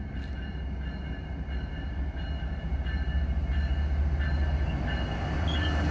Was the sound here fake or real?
real